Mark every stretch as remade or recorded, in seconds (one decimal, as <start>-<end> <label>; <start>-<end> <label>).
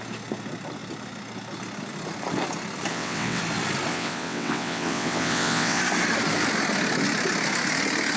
0.0-2.9 recorded; 2.9-3.4 remade; 3.4-3.9 recorded; 3.9-5.8 remade; 5.8-8.2 recorded